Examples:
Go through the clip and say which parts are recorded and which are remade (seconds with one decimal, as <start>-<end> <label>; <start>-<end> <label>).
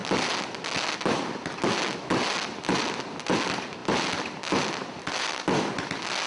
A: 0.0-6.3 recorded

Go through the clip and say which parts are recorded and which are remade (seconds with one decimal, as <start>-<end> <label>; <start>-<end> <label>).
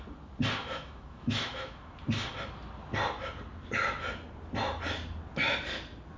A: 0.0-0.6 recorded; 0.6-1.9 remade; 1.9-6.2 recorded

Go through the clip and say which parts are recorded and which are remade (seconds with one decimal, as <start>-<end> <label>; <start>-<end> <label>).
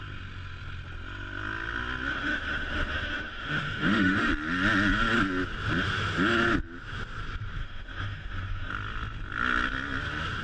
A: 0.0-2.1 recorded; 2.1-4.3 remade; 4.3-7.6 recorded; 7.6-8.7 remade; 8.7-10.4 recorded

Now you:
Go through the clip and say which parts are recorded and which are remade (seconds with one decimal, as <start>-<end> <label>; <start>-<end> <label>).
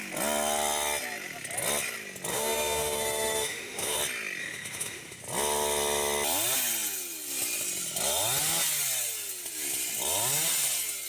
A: 0.0-2.3 recorded; 2.3-4.0 remade; 4.0-4.4 recorded; 4.4-5.2 remade; 5.2-11.1 recorded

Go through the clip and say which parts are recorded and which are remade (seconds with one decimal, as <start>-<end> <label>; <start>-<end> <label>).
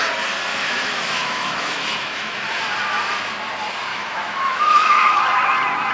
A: 0.0-0.5 recorded; 0.5-2.6 remade; 2.6-3.9 recorded; 3.9-5.2 remade; 5.2-5.9 recorded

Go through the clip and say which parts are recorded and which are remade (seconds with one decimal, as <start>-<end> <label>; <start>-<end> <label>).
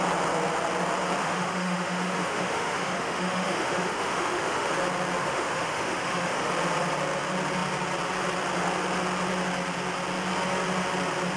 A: 0.0-1.2 recorded; 1.2-4.7 remade; 4.7-5.2 recorded; 5.2-6.5 remade; 6.5-11.4 recorded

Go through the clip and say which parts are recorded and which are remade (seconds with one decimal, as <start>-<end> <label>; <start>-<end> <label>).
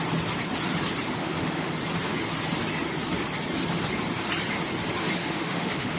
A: 0.0-1.2 recorded; 1.2-1.7 remade; 1.7-5.2 recorded; 5.2-6.0 remade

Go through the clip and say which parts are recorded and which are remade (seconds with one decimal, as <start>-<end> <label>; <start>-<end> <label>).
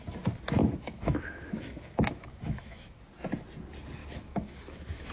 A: 0.0-0.6 recorded; 0.6-3.0 remade; 3.0-4.0 recorded; 4.0-5.1 remade